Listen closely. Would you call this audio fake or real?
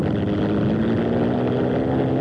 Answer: real